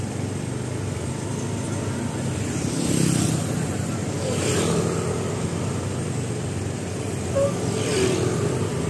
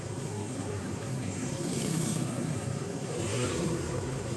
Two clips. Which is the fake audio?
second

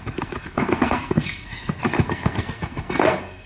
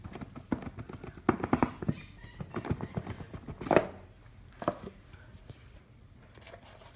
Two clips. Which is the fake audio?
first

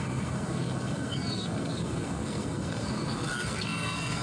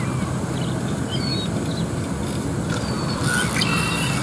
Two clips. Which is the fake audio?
first